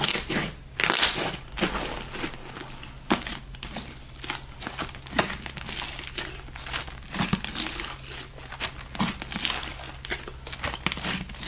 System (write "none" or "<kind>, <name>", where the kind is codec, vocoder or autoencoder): none